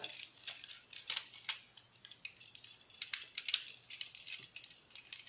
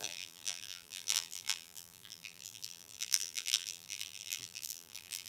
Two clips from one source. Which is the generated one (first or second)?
second